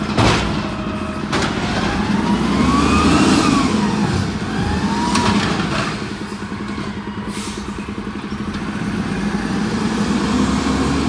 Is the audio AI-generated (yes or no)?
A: no